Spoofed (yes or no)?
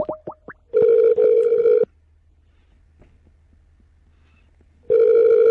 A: no